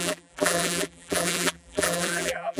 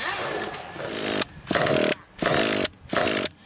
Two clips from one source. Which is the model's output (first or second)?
first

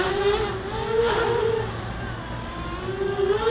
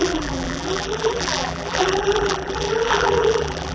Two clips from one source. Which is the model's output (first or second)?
second